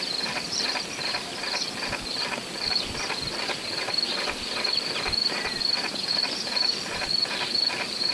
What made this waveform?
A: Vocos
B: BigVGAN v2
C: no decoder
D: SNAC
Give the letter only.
B